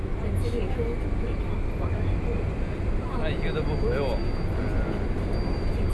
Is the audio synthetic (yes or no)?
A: no